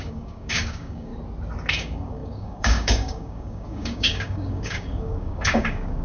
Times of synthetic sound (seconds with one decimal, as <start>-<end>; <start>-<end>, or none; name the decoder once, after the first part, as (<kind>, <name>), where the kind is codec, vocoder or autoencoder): 0.0-1.1 (codec, DAC); 1.7-6.0